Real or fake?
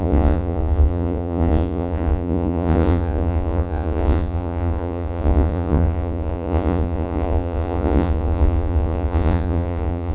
fake